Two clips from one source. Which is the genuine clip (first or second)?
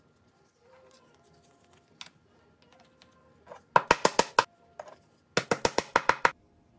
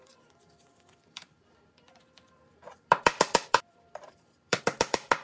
first